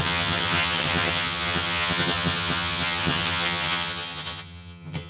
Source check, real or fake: fake